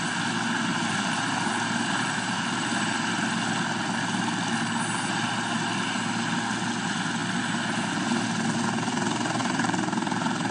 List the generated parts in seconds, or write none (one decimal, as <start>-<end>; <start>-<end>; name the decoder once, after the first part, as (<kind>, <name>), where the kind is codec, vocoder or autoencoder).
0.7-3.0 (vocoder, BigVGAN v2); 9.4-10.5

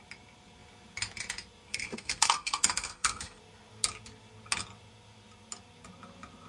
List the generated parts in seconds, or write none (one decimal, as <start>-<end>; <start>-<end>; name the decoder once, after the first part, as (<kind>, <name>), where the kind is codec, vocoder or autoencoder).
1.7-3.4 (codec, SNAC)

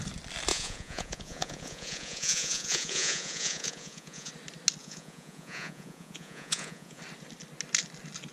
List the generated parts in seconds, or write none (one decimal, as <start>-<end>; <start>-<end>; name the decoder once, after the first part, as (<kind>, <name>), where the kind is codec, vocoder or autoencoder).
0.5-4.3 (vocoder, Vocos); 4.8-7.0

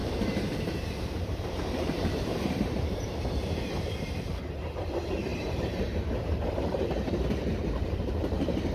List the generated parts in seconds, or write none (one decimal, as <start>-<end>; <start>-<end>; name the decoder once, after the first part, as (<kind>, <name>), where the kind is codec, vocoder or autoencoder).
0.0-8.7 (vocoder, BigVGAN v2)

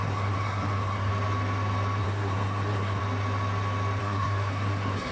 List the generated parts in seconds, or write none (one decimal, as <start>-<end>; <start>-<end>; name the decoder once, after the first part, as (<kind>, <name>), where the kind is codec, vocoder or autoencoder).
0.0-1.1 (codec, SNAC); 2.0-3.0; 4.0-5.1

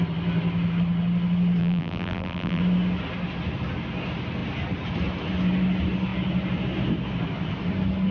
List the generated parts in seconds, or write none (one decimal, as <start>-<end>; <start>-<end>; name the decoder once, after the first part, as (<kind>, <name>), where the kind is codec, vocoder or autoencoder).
1.6-2.6 (vocoder, BigVGAN v2)